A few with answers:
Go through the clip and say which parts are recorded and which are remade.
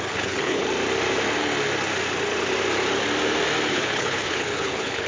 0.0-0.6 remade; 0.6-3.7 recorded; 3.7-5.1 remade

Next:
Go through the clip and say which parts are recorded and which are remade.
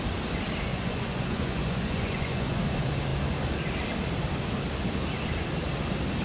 0.0-0.7 recorded; 0.7-2.6 remade; 2.6-6.2 recorded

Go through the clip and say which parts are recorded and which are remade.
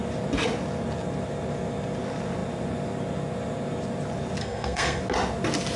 0.0-4.4 recorded; 4.4-5.0 remade; 5.0-5.8 recorded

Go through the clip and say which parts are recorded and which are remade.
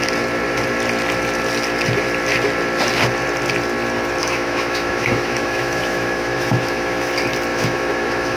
0.0-4.2 recorded; 4.2-7.1 remade; 7.1-7.5 recorded; 7.5-8.4 remade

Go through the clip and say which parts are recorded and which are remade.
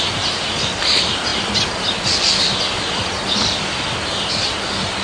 0.0-5.0 recorded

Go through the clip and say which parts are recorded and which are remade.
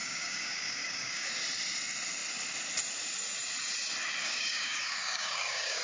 0.0-1.3 remade; 1.3-4.2 recorded; 4.2-5.8 remade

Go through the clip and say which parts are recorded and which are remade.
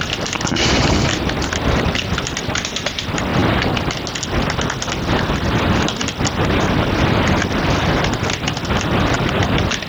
0.0-9.9 recorded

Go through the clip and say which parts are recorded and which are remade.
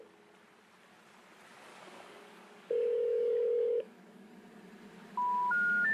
0.0-1.7 recorded; 1.7-4.3 remade; 4.3-5.9 recorded